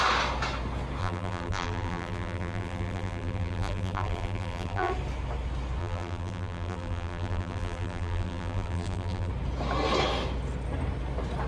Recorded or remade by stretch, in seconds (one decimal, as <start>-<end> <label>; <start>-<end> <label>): 0.0-1.0 recorded; 1.0-4.9 remade; 4.9-5.8 recorded; 5.8-9.3 remade; 9.3-11.5 recorded